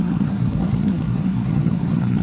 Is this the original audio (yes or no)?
no